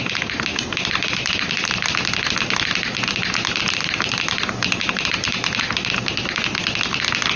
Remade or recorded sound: recorded